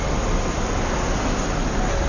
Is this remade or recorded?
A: recorded